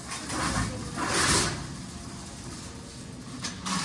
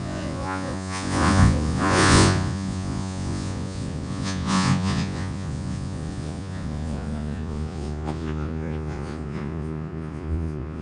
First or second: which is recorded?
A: first